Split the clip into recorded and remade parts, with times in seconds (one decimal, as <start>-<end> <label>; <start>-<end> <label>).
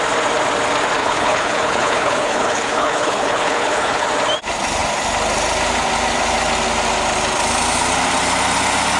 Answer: 0.0-1.0 recorded; 1.0-4.1 remade; 4.1-9.0 recorded